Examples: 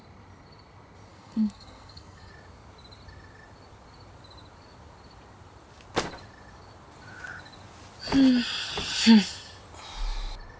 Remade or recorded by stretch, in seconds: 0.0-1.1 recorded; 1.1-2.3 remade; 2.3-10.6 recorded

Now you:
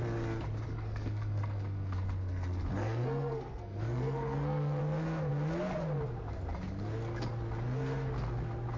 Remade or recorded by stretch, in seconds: 0.0-0.7 recorded; 0.7-4.8 remade; 4.8-8.8 recorded

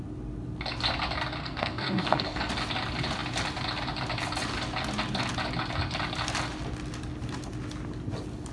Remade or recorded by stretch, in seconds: 0.0-1.4 recorded; 1.4-2.5 remade; 2.5-8.5 recorded

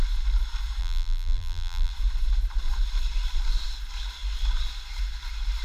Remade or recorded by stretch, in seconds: 0.0-0.8 recorded; 0.8-1.9 remade; 1.9-5.6 recorded

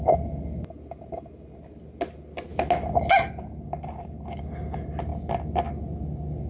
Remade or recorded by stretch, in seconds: 0.0-6.5 recorded

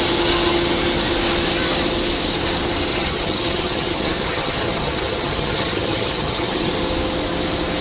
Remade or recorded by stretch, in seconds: 0.0-2.9 recorded; 2.9-6.7 remade; 6.7-7.8 recorded